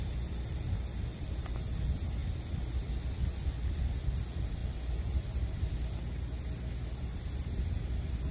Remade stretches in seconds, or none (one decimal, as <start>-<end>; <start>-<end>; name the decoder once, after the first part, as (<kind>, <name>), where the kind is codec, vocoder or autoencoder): none